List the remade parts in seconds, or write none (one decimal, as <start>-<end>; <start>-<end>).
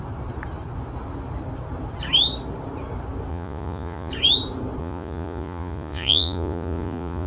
3.3-4.1; 4.8-7.3